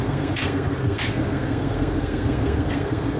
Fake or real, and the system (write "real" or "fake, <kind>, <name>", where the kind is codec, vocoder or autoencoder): fake, codec, SNAC